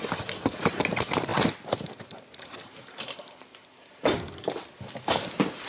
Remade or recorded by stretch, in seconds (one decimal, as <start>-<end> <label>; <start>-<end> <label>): 0.0-5.7 recorded

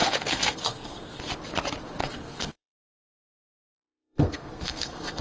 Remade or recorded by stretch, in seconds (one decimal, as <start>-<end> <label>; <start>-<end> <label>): 0.0-1.2 remade; 1.2-2.0 recorded; 2.0-5.2 remade